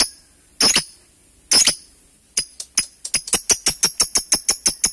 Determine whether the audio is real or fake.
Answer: real